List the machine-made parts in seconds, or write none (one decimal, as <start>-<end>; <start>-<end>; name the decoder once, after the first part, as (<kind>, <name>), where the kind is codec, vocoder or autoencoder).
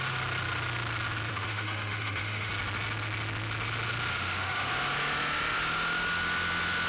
1.3-2.5 (autoencoder, DAC-VAE); 4.1-4.7